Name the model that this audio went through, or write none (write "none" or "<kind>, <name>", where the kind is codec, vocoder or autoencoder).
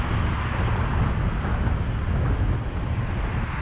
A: none